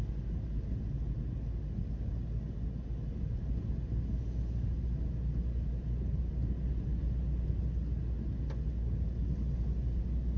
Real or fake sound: real